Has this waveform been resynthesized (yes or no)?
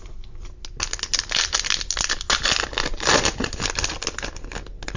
no